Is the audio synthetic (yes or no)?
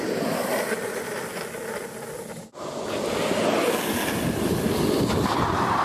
no